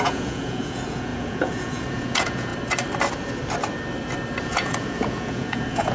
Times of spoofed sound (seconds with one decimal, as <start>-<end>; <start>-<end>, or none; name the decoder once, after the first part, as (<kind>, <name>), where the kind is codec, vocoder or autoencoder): 0.0-2.5 (vocoder, Vocos); 4.4-5.9